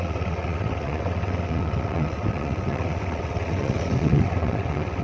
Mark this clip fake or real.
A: fake